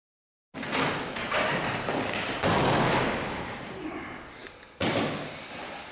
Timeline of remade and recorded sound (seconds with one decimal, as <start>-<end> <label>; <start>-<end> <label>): 0.0-5.9 recorded